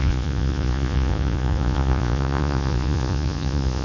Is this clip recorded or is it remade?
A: remade